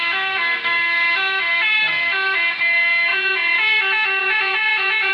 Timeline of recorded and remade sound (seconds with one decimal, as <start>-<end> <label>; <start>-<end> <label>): 0.0-3.1 recorded; 3.1-3.8 remade; 3.8-4.2 recorded; 4.2-5.1 remade